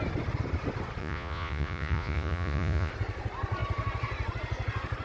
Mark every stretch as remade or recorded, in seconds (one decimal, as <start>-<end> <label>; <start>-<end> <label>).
0.0-1.0 recorded; 1.0-2.9 remade; 2.9-5.0 recorded